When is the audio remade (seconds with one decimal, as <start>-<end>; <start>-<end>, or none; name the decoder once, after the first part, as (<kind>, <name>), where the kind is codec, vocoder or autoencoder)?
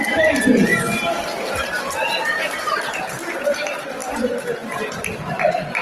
0.0-4.0 (vocoder, BigVGAN v2); 4.9-5.8